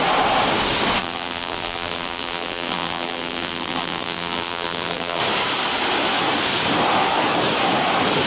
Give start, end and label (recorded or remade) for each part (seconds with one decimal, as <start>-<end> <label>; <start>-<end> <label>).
0.0-1.0 recorded; 1.0-5.2 remade; 5.2-8.3 recorded